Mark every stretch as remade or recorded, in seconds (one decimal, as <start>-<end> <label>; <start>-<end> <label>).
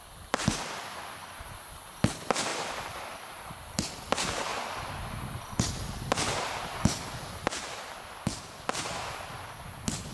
0.0-2.5 recorded; 2.5-3.9 remade; 3.9-10.1 recorded